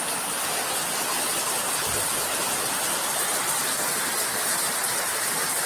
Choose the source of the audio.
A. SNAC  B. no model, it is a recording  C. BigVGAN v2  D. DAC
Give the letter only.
B